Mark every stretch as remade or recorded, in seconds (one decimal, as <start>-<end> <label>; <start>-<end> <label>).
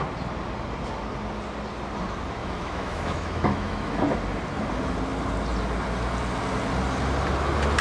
0.0-2.4 recorded; 2.4-4.0 remade; 4.0-7.8 recorded